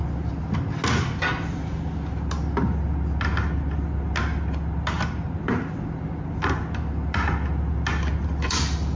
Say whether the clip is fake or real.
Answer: real